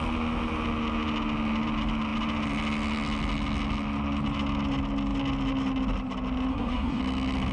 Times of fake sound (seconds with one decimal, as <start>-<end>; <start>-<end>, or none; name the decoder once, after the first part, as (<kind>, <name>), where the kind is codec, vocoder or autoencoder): 6.5-7.0 (codec, SNAC)